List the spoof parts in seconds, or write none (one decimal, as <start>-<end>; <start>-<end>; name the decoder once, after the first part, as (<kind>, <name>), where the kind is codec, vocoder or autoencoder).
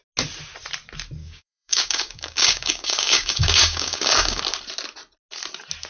1.2-4.4 (codec, DAC)